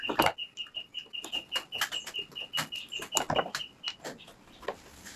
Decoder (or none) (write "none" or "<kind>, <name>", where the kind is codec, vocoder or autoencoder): none